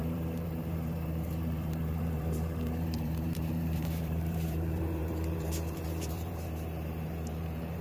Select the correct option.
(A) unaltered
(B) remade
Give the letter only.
B